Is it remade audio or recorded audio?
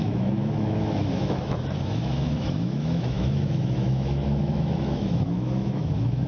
remade